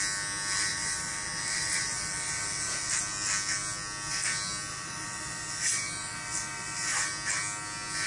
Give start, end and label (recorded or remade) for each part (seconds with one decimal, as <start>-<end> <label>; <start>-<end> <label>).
0.0-0.7 recorded; 0.7-3.0 remade; 3.0-4.7 recorded; 4.7-7.1 remade; 7.1-8.1 recorded